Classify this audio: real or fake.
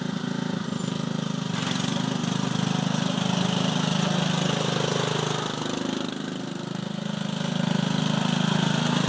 real